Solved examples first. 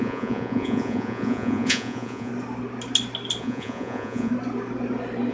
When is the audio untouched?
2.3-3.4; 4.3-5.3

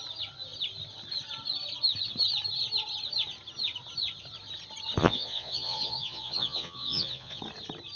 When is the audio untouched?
0.0-5.0; 7.4-8.0

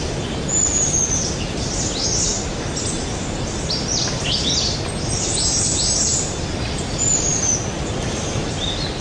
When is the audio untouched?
0.0-9.0